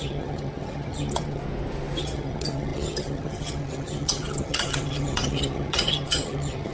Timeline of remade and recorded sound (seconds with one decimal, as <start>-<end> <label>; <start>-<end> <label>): 0.0-1.4 remade; 1.4-2.0 recorded; 2.0-6.7 remade